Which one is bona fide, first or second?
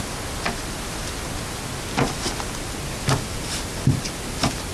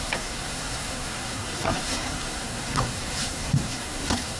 first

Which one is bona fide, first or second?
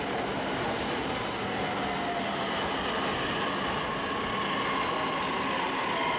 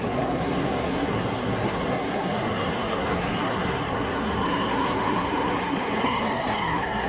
first